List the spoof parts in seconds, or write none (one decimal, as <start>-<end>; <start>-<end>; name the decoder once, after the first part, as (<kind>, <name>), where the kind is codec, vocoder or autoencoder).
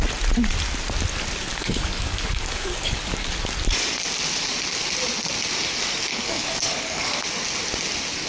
1.5-3.5 (codec, DAC); 6.1-7.2